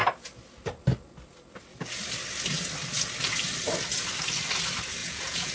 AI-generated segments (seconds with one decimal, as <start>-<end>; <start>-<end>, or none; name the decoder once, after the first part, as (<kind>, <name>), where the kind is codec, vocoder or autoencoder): 5.0-5.5 (vocoder, Vocos)